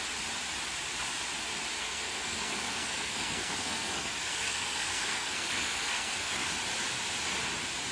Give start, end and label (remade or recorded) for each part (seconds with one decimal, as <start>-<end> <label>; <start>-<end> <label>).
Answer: 0.0-1.8 recorded; 1.8-6.5 remade; 6.5-7.9 recorded